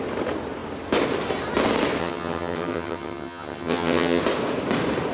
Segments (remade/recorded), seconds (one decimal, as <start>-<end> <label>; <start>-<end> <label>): 0.0-2.0 recorded; 2.0-4.2 remade; 4.2-5.1 recorded